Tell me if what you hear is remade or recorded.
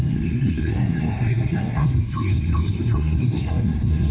remade